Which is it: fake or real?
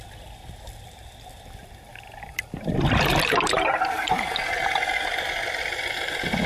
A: real